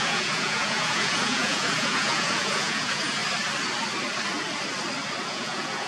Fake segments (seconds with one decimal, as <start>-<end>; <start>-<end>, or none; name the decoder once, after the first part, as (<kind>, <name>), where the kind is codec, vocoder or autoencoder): 0.0-3.2 (vocoder, Vocos); 5.2-5.9